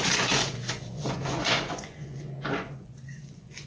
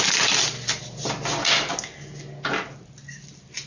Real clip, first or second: second